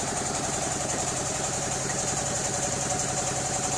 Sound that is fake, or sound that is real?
fake